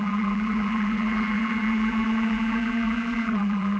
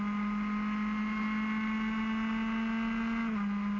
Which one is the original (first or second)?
second